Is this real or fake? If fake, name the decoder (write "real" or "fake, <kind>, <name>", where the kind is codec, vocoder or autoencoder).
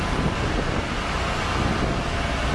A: real